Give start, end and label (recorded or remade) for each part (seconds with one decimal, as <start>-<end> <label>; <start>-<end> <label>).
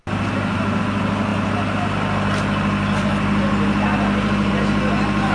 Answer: 0.0-5.3 recorded